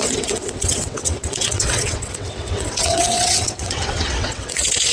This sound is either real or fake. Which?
fake